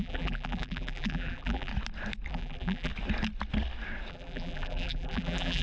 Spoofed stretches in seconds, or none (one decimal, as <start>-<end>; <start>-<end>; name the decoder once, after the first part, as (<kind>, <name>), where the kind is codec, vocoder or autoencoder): 0.0-1.7 (vocoder, BigVGAN v2); 2.3-2.9; 4.1-5.6